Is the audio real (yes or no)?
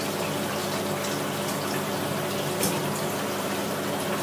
yes